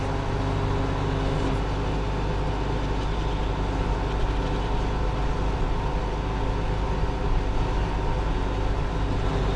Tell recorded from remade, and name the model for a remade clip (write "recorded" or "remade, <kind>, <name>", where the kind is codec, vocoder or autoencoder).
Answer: recorded